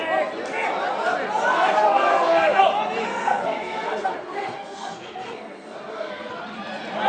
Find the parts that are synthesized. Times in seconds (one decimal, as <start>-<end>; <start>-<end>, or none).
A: 1.5-2.6; 3.1-6.3